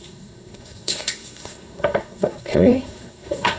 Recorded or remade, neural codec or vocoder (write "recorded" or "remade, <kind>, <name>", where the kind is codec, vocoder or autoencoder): remade, codec, SNAC